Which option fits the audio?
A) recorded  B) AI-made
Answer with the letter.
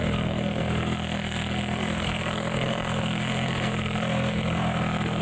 B